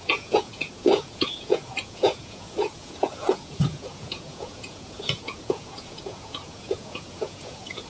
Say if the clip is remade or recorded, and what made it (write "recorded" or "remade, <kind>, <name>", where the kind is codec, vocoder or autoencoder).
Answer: remade, vocoder, Vocos